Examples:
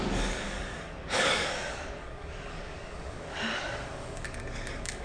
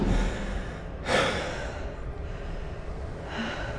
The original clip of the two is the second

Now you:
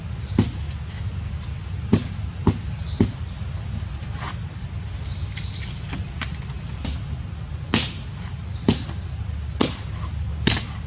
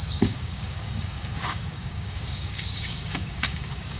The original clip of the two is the first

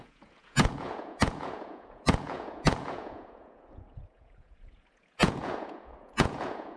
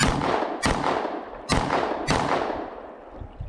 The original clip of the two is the second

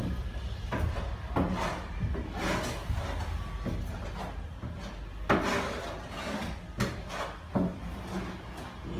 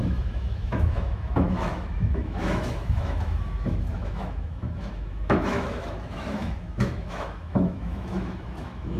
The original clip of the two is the first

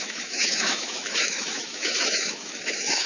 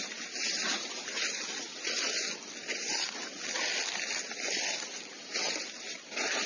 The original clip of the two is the second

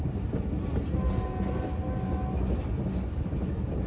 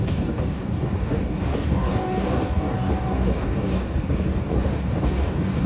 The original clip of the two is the first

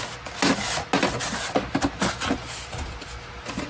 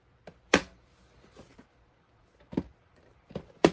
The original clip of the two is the first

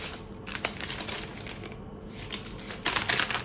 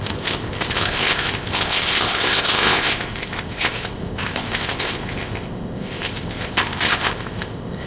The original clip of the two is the first